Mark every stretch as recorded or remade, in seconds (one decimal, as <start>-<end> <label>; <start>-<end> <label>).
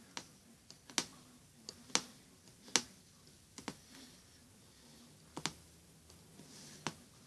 0.0-7.3 recorded